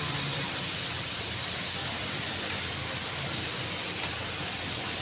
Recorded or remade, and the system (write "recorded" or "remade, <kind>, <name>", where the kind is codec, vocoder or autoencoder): remade, vocoder, BigVGAN v2